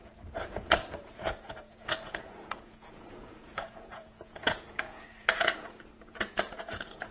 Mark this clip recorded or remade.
remade